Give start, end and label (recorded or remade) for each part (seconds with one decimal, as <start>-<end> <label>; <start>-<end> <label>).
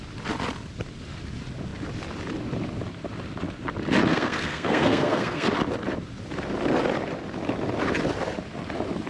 0.0-4.1 recorded; 4.1-5.5 remade; 5.5-9.1 recorded